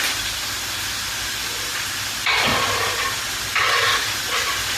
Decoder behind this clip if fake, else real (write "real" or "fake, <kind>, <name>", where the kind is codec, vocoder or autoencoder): real